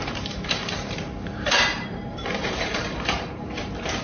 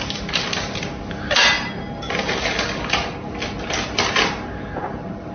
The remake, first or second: first